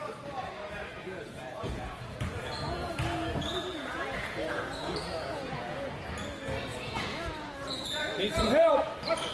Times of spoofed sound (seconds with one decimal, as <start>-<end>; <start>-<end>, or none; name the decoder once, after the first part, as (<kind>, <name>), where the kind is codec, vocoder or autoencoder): 0.9-6.0 (vocoder, Vocos); 6.7-8.7